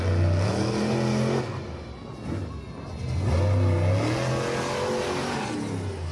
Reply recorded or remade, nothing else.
recorded